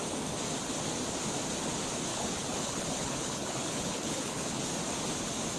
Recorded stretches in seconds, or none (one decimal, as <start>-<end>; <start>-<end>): 0.0-2.1; 4.6-5.6